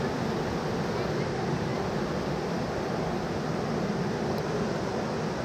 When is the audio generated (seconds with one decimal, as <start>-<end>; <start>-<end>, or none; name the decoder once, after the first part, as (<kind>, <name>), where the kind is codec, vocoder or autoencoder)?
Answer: none